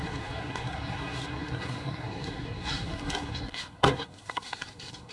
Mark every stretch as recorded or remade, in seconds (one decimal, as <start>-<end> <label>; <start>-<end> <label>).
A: 0.0-5.1 remade